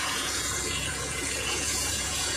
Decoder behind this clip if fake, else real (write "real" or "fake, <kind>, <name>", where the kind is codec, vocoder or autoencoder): fake, vocoder, Vocos